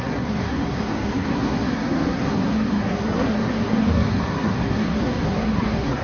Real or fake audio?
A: fake